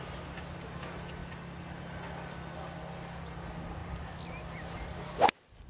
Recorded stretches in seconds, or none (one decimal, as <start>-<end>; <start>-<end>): 0.0-5.7